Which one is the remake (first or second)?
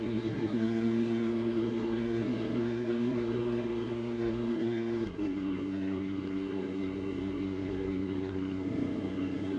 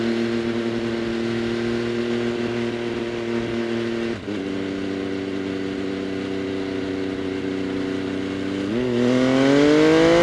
first